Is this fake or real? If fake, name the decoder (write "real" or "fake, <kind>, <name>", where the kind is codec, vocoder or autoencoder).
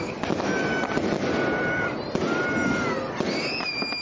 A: real